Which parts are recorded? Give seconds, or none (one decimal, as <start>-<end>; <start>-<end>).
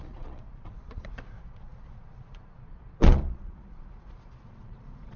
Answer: none